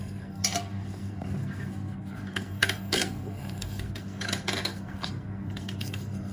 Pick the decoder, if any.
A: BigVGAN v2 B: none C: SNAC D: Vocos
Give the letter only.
C